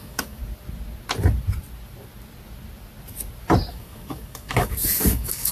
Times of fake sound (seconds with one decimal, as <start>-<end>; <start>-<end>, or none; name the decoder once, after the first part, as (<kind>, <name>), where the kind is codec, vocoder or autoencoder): 0.0-0.4 (codec, DAC); 3.7-5.5